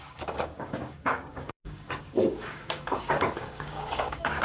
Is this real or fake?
fake